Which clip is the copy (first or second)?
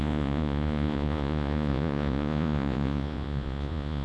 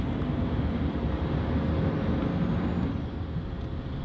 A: first